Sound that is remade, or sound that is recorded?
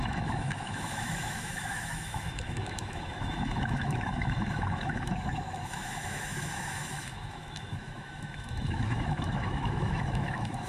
remade